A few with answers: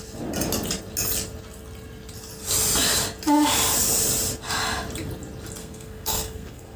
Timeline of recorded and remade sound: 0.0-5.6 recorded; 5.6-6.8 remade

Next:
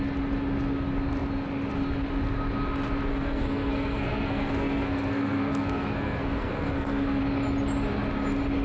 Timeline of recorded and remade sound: 0.0-3.1 recorded; 3.1-7.2 remade; 7.2-8.6 recorded

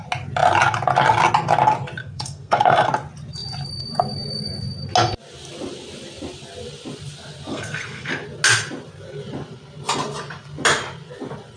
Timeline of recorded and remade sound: 0.0-2.0 recorded; 2.0-2.9 remade; 2.9-7.5 recorded; 7.5-8.1 remade; 8.1-11.6 recorded

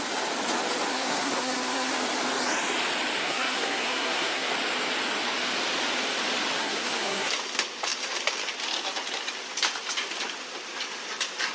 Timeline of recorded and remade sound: 0.0-0.9 recorded; 0.9-1.9 remade; 1.9-3.2 recorded; 3.2-4.5 remade; 4.5-6.6 recorded; 6.6-7.3 remade; 7.3-11.5 recorded

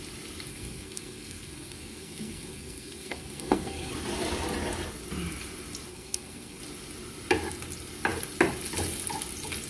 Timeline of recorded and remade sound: 0.0-0.5 recorded; 0.5-3.9 remade; 3.9-5.9 recorded; 5.9-6.6 remade; 6.6-9.7 recorded

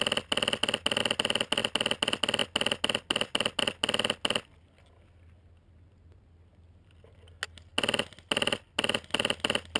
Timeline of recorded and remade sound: 0.0-9.8 recorded

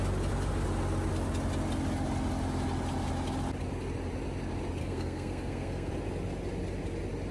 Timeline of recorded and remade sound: 0.0-4.8 recorded; 4.8-5.9 remade; 5.9-7.3 recorded